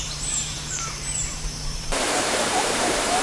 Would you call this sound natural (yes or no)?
no